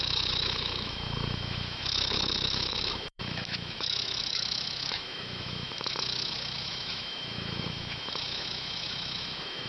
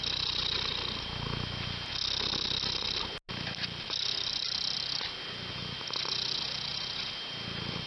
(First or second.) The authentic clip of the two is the second